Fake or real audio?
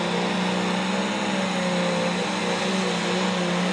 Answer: real